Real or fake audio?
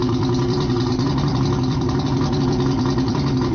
fake